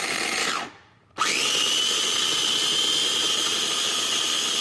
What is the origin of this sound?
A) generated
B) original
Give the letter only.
B